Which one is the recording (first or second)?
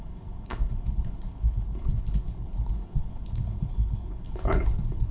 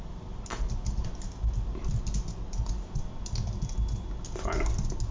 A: second